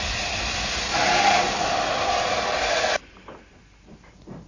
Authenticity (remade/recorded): recorded